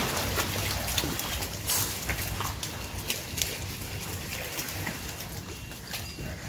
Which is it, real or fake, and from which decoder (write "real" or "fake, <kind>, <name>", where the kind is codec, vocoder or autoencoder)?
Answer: real